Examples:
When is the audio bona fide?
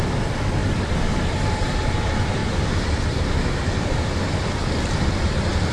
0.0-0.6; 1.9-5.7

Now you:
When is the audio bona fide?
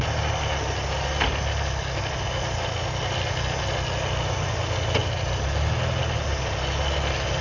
0.0-7.4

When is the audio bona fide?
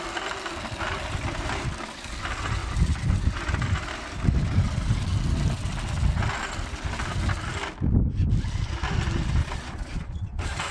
0.0-9.4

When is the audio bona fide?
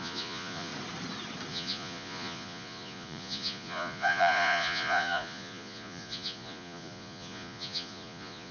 0.7-1.5